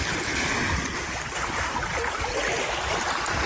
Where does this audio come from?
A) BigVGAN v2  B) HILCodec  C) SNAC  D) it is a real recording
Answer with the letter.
D